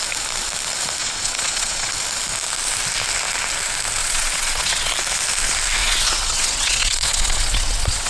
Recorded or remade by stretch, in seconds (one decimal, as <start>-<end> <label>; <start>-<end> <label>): 0.0-1.0 recorded; 1.0-1.9 remade; 1.9-4.0 recorded; 4.0-4.9 remade; 4.9-5.8 recorded; 5.8-8.1 remade